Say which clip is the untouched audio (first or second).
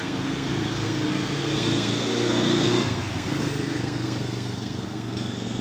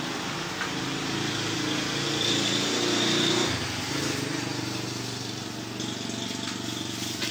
second